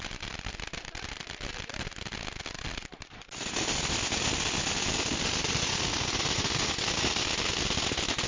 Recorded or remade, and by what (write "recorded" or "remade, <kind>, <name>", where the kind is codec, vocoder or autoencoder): recorded